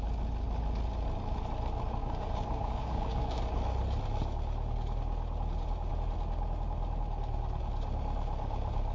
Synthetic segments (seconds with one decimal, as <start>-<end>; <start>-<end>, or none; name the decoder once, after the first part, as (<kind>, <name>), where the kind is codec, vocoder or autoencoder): 2.0-3.4 (codec, DAC)